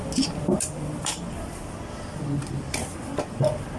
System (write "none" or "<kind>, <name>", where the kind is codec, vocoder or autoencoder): none